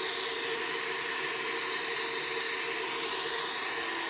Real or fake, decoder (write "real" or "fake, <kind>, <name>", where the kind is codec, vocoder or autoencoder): real